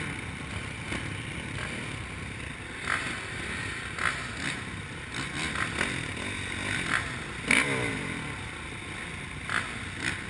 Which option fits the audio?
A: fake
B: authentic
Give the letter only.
B